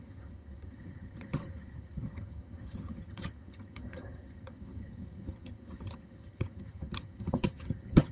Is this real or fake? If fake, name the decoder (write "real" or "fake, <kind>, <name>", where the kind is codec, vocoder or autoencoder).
fake, vocoder, HiFi-GAN